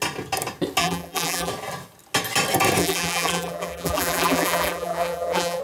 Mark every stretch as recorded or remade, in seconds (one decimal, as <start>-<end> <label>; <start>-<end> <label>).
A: 0.0-0.8 recorded; 0.8-1.5 remade; 1.5-2.8 recorded; 2.8-5.6 remade